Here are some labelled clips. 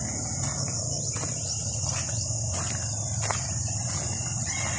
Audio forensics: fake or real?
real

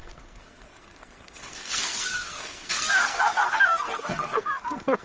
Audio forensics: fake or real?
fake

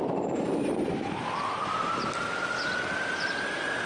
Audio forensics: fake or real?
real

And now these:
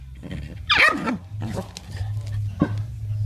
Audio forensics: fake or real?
real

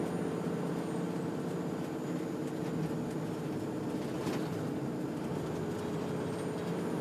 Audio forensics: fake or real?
real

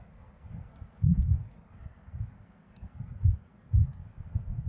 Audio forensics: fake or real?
fake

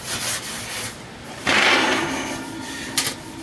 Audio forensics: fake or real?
real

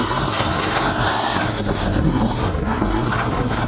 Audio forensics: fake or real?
fake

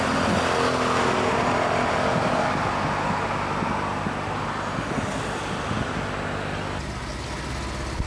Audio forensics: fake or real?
real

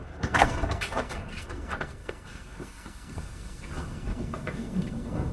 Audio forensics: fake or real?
fake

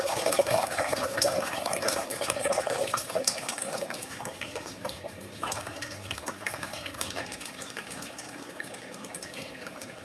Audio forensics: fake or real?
fake